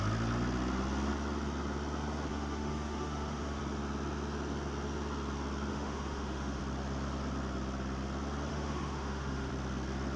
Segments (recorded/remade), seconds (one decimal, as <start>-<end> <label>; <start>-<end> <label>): 0.0-2.3 recorded; 2.3-3.6 remade; 3.6-5.7 recorded; 5.7-6.6 remade; 6.6-8.5 recorded; 8.5-9.5 remade; 9.5-10.2 recorded